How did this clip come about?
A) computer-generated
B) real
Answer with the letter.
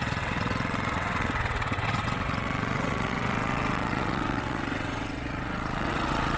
A